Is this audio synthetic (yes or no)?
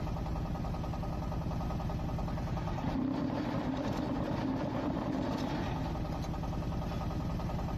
no